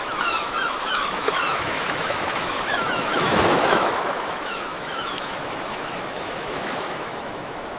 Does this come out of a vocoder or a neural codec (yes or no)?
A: yes